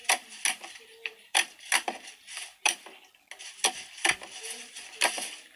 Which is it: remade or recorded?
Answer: recorded